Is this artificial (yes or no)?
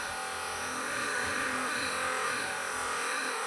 yes